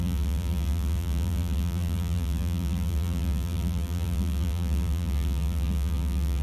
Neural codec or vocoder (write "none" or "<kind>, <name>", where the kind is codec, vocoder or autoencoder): vocoder, BigVGAN v2